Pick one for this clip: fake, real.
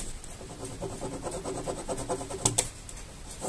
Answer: real